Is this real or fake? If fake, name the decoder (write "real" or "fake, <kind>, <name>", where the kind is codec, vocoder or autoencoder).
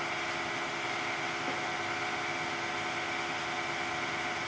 real